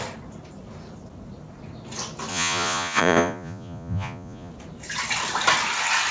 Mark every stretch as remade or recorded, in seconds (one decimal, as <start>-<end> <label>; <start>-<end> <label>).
0.0-2.3 recorded; 2.3-4.5 remade; 4.5-6.1 recorded